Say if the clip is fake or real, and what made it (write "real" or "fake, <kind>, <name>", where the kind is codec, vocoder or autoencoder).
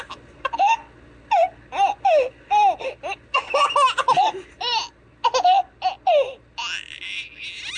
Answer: real